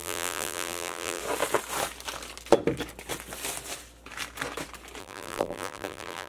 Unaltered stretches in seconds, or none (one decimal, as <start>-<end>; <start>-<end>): 1.2-5.0